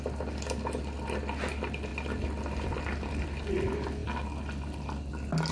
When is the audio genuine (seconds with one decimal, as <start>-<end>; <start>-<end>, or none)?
0.0-5.5